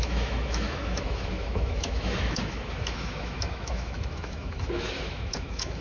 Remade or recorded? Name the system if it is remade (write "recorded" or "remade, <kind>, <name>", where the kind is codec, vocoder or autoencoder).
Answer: remade, autoencoder, DAC-VAE